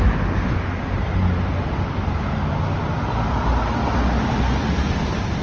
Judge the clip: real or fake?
real